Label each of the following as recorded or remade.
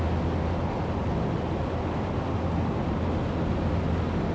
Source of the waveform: recorded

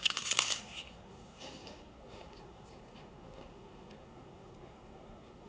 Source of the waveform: remade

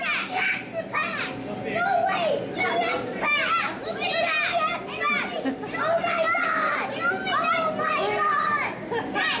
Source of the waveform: recorded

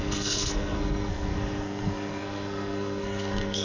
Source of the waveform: remade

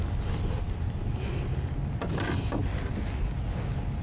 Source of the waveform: recorded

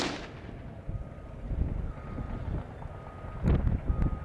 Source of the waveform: recorded